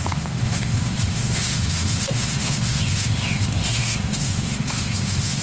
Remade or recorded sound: remade